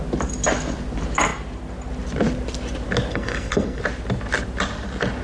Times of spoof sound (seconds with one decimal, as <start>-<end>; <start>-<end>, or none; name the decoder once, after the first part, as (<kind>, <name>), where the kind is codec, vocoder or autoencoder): 3.1-3.8 (codec, SNAC)